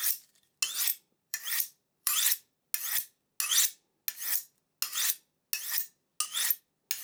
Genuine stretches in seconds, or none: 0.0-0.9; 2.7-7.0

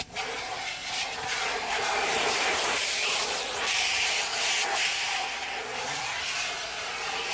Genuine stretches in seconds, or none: 0.0-0.8; 4.1-7.3

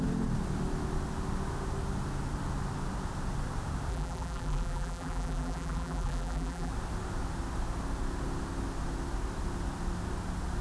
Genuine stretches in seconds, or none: 0.0-3.9; 6.7-10.6

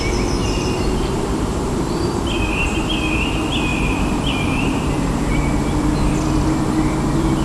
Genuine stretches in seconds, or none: 0.0-0.4; 3.2-3.7; 5.3-7.4

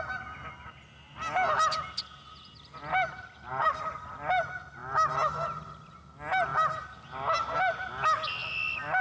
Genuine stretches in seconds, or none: 0.0-9.0